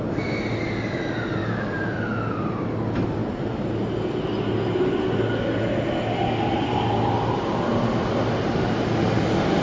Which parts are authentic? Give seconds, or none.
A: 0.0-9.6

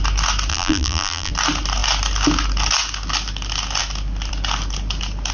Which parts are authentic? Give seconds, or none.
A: 0.0-0.5; 1.3-5.3

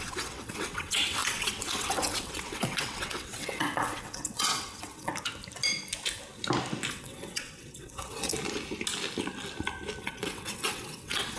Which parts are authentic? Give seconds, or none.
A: 5.1-6.9; 8.3-10.0

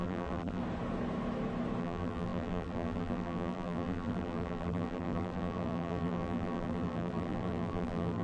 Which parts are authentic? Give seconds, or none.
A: 0.6-1.8

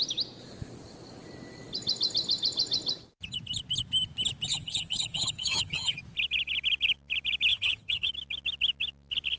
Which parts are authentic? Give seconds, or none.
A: 0.0-4.5; 6.0-7.5; 8.1-9.4

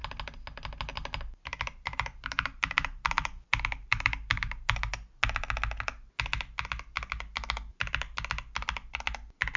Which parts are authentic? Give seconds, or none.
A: 0.0-0.9; 4.9-7.7; 8.3-9.6

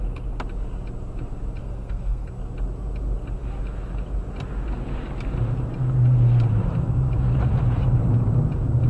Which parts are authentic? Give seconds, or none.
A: 0.0-1.6; 2.3-8.9

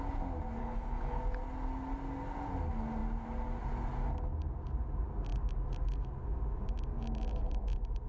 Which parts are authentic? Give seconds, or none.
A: 0.0-0.6; 1.2-8.1